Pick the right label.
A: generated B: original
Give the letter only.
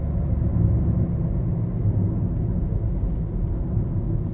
B